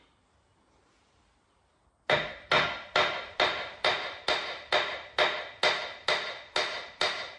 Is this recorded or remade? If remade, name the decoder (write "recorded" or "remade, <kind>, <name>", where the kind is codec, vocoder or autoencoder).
recorded